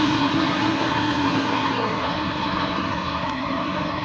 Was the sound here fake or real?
fake